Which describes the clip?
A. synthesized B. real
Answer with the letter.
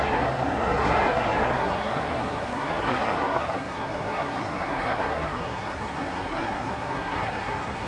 A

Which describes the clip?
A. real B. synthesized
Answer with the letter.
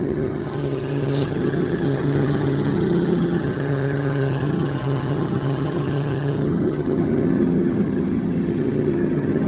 B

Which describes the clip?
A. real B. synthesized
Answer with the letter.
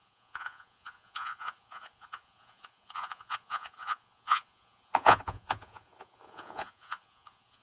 B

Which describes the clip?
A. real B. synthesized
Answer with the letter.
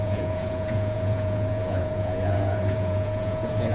B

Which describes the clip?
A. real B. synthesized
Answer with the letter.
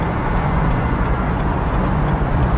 B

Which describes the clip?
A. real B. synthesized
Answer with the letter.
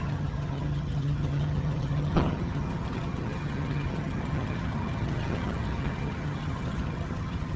B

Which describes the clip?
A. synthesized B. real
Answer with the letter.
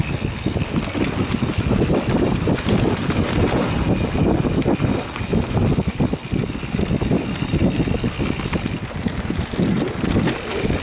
B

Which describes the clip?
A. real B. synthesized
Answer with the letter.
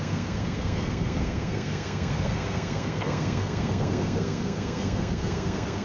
B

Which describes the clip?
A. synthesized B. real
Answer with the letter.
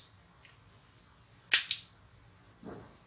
B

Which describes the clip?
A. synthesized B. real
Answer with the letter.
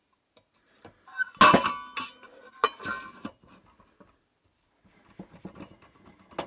B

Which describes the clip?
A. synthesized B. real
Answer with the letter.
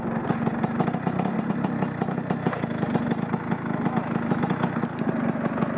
B